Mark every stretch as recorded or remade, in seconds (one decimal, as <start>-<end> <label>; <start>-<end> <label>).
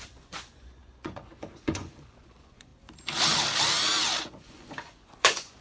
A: 0.0-2.7 remade; 2.7-4.2 recorded; 4.2-5.6 remade